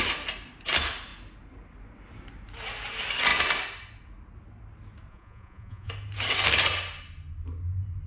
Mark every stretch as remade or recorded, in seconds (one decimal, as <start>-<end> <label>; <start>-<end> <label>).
0.0-5.1 recorded; 5.1-5.9 remade; 5.9-8.1 recorded